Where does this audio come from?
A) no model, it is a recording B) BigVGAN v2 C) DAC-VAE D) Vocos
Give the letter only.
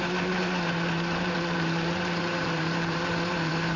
B